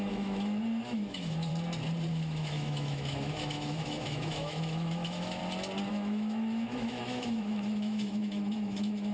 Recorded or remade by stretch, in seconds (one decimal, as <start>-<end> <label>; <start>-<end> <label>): 0.0-1.5 remade; 1.5-2.1 recorded; 2.1-5.4 remade; 5.4-5.9 recorded; 5.9-9.1 remade